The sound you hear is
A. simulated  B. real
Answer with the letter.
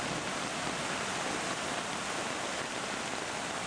B